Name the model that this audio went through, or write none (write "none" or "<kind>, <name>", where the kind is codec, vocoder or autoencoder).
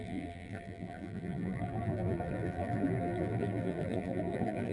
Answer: vocoder, BigVGAN v2